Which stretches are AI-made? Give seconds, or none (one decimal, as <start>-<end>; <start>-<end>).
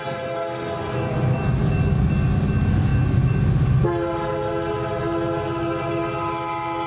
none